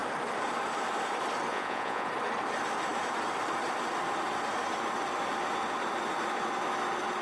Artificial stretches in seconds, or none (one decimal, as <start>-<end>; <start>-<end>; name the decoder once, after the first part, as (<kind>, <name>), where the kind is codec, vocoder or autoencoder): 1.5-2.1 (vocoder, Vocos)